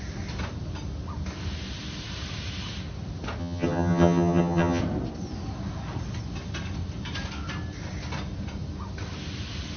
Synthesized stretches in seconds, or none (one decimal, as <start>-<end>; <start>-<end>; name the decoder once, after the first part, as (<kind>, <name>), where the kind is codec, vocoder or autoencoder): 3.4-4.8 (vocoder, HiFi-GAN)